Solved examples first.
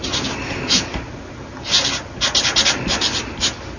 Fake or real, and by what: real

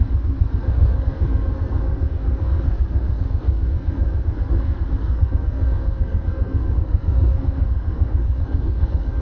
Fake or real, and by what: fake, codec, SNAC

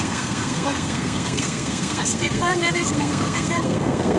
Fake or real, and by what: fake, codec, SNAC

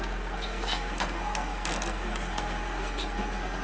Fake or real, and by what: fake, codec, SNAC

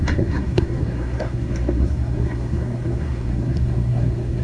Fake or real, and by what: fake, codec, SNAC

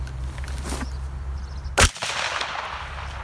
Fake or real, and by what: real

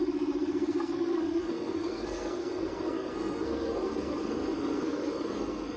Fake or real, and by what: fake, codec, SNAC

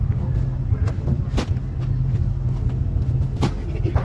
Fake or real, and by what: real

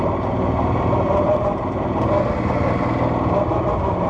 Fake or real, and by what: real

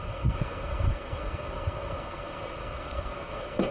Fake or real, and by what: fake, codec, SNAC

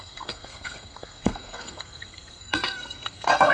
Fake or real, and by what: fake, codec, SNAC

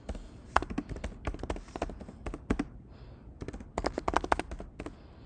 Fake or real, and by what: real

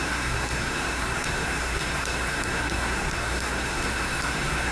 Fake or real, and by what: fake, codec, SNAC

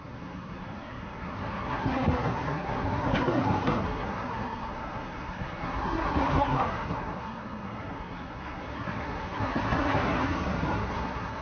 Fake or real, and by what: fake, codec, SNAC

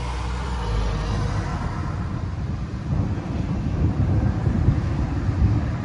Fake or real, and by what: real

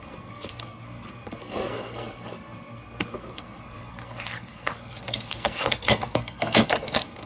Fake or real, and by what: fake, codec, SNAC